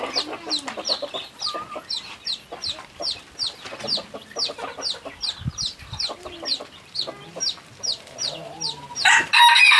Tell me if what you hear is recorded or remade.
recorded